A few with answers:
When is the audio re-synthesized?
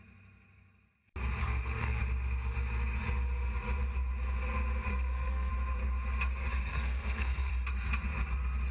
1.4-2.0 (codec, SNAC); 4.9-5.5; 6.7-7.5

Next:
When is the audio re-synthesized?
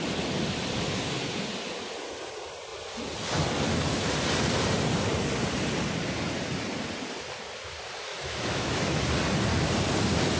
8.1-9.0 (autoencoder, DAC-VAE)